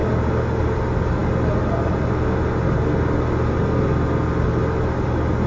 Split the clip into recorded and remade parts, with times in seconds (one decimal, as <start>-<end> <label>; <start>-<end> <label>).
0.0-5.5 recorded